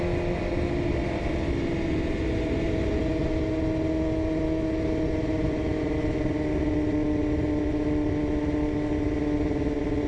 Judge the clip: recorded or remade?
recorded